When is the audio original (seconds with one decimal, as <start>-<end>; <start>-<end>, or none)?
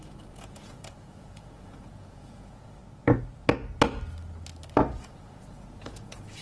2.8-4.9